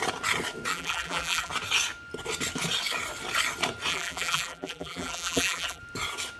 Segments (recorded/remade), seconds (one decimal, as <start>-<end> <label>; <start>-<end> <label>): 0.0-0.7 recorded; 0.7-1.5 remade; 1.5-3.9 recorded; 3.9-5.8 remade; 5.8-6.4 recorded